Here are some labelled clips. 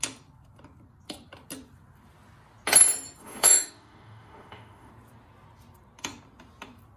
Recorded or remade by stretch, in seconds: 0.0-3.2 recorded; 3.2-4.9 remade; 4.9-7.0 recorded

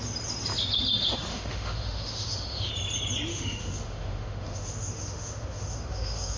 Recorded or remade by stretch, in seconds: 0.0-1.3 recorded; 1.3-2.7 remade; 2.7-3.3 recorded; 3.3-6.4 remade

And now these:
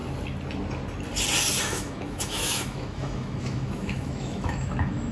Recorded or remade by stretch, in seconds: 0.0-1.6 recorded; 1.6-5.1 remade

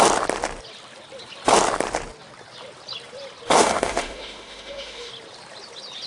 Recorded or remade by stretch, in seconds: 0.0-3.5 recorded; 3.5-5.1 remade; 5.1-6.1 recorded